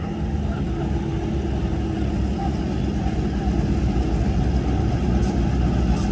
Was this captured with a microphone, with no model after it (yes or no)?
yes